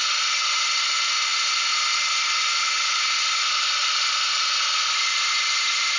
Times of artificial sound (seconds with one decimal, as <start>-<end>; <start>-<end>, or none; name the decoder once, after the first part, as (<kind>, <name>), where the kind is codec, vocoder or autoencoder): none